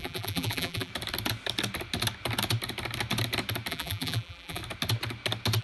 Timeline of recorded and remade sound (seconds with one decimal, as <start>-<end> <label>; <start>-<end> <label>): 0.0-0.9 remade; 0.9-3.7 recorded; 3.7-4.6 remade; 4.6-5.6 recorded